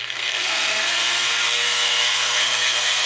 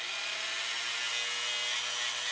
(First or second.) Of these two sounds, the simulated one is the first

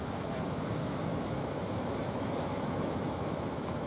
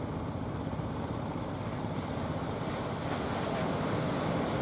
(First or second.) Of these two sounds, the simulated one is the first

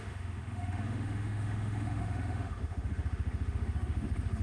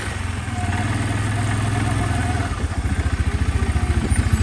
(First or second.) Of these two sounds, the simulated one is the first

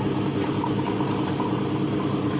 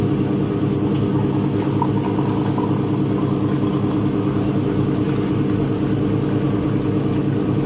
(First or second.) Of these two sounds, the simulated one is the first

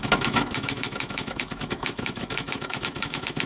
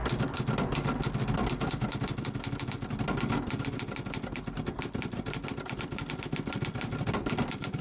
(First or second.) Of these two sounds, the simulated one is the first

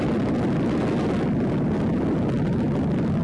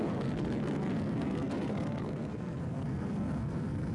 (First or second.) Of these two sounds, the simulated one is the second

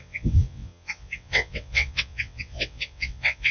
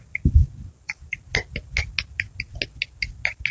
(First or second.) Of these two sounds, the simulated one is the first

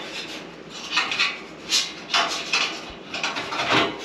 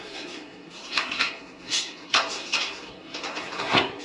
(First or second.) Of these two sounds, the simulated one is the second